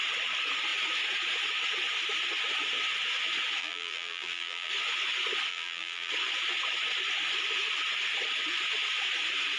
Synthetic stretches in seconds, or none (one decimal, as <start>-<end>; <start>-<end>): 3.6-4.7; 5.5-6.1